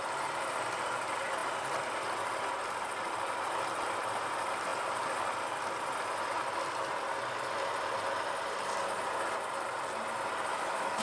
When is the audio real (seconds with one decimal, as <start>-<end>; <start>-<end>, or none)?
0.0-10.5

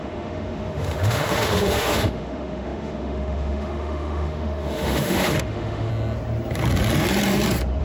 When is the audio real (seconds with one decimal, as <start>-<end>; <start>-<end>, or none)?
5.9-7.8

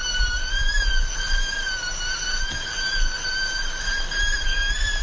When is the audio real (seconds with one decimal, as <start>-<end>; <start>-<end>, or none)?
1.9-5.0

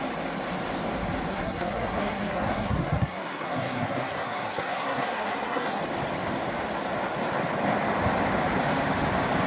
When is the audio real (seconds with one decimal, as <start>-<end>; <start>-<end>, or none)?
0.0-1.3; 5.8-9.5